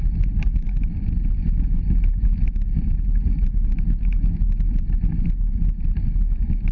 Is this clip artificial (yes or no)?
no